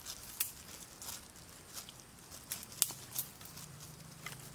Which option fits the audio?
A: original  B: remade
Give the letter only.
A